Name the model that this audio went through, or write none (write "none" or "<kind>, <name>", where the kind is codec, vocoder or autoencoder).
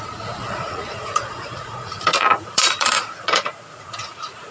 vocoder, Vocos